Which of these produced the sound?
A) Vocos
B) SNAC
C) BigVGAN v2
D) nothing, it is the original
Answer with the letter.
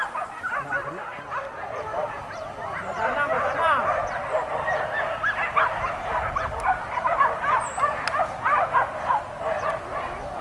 D